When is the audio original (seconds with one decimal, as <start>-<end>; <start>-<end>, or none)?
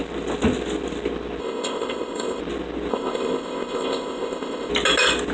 0.0-1.4; 2.4-2.9; 4.7-5.3